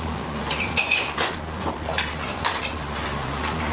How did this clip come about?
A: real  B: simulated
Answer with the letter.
B